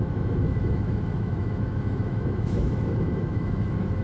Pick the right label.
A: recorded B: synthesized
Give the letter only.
B